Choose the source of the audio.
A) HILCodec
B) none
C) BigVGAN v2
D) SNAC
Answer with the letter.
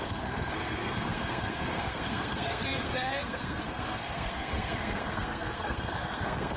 D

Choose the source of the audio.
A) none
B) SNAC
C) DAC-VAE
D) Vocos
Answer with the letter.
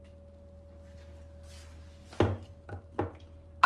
A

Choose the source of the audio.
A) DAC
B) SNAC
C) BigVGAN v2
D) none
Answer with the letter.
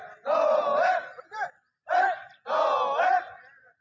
D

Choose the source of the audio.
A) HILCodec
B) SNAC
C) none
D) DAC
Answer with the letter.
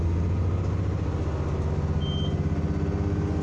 C